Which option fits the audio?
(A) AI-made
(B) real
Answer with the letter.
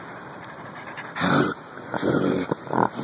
A